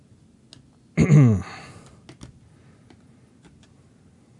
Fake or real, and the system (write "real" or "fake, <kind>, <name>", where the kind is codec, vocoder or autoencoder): real